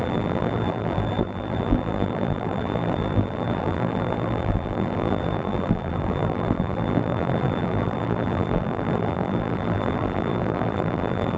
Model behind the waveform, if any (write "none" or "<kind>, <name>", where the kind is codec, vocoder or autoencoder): vocoder, BigVGAN v2